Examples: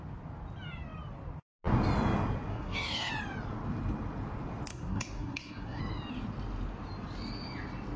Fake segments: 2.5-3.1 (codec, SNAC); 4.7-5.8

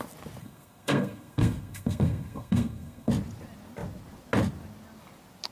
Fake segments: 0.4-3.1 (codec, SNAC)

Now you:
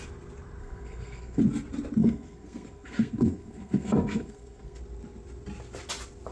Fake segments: 0.6-1.4 (codec, SNAC); 2.0-4.8

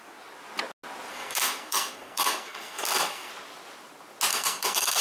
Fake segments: 1.1-3.3 (codec, SNAC); 4.3-5.0

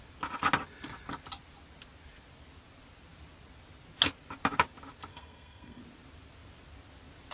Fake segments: 5.1-5.8 (codec, SNAC)